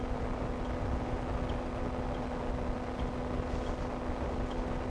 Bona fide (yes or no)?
yes